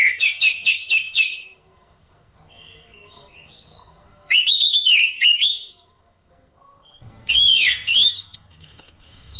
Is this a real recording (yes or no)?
no